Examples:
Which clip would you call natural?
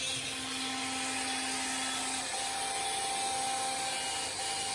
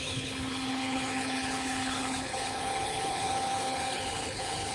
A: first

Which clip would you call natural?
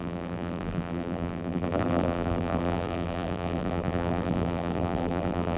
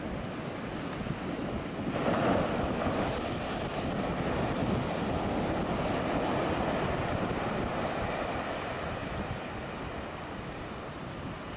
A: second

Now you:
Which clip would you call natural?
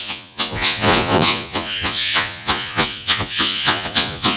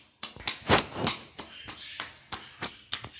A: second